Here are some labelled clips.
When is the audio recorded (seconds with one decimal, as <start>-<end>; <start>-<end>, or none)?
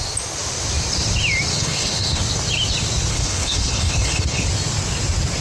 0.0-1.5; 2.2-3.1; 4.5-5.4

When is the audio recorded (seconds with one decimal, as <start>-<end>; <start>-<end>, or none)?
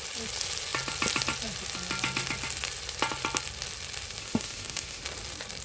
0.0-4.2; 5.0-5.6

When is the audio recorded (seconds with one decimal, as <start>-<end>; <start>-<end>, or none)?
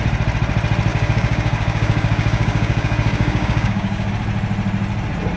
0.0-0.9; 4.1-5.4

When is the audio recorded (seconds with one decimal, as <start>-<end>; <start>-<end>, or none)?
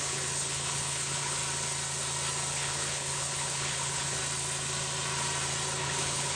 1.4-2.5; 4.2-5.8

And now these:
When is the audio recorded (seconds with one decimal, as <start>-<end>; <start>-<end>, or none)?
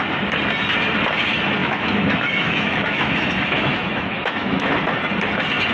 0.0-1.6; 4.7-5.7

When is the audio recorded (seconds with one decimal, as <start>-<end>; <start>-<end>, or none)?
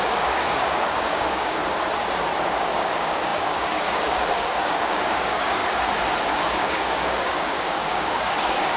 1.6-2.4; 5.6-6.2